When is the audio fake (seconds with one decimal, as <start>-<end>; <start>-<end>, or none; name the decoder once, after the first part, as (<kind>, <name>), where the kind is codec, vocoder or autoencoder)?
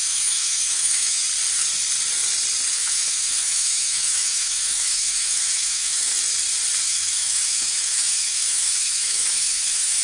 0.0-1.2 (autoencoder, DAC-VAE); 2.7-6.1; 6.8-10.0